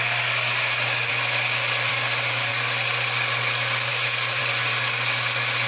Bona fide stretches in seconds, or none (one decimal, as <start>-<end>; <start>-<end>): 1.1-1.9; 2.5-3.9; 4.4-5.7